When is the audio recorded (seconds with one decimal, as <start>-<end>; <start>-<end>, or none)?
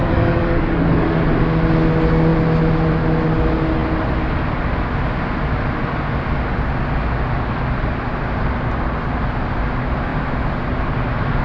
1.2-11.4